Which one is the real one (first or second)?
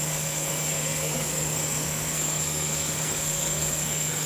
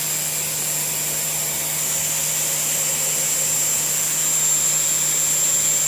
second